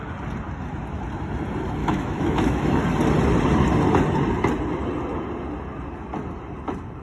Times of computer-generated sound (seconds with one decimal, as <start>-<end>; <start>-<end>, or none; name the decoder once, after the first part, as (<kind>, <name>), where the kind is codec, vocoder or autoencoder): 1.8-2.8 (autoencoder, DAC-VAE)